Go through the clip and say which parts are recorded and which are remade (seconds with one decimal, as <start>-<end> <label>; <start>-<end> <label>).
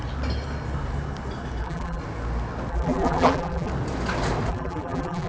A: 0.0-1.6 recorded; 1.6-2.0 remade; 2.0-2.7 recorded; 2.7-3.7 remade; 3.7-4.5 recorded; 4.5-5.3 remade